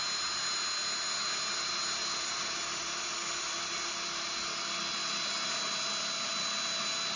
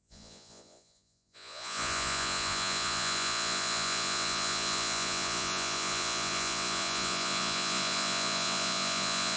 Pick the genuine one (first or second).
first